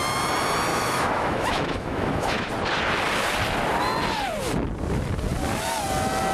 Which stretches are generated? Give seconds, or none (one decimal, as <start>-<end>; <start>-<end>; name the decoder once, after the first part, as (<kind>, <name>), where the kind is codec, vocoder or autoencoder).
0.7-2.5 (autoencoder, DAC-VAE)